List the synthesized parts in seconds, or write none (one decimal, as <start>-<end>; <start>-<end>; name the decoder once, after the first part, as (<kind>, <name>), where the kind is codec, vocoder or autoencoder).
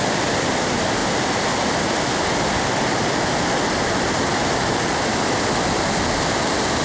none